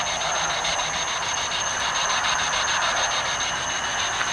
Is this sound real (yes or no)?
yes